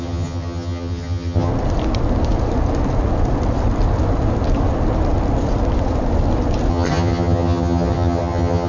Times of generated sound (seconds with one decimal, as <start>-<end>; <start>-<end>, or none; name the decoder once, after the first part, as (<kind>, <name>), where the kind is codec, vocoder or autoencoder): 0.0-1.5 (vocoder, HiFi-GAN); 6.7-8.7